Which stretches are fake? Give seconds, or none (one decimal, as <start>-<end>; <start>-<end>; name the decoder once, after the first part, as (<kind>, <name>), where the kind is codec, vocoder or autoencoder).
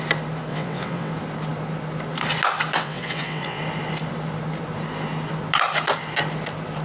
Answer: 0.5-1.1 (vocoder, WaveNeXt); 2.8-3.6